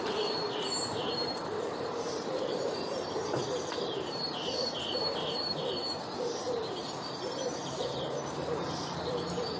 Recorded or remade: remade